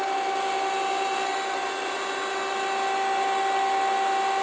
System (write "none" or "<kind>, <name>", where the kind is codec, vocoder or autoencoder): none